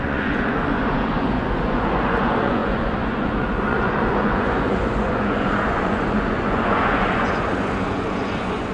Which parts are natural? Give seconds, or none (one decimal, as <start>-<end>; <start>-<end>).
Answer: none